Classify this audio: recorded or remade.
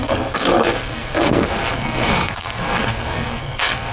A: remade